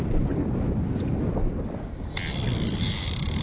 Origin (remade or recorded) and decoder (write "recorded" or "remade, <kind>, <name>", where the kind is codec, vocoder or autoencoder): recorded